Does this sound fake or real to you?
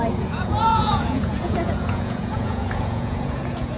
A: fake